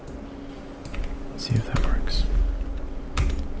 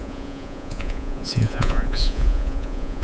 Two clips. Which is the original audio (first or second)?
first